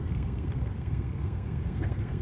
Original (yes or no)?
no